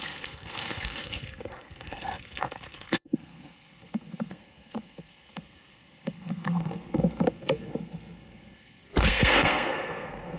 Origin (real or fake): fake